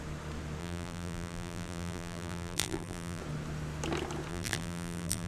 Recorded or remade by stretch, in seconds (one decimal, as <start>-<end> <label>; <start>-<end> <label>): 0.0-0.6 recorded; 0.6-3.2 remade; 3.2-4.3 recorded; 4.3-5.3 remade